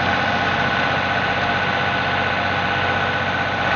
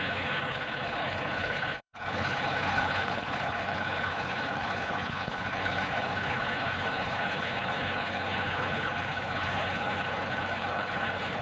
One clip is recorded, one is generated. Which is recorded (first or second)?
first